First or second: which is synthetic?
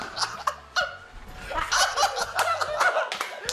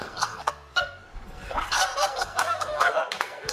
second